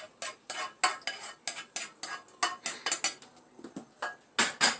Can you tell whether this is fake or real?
real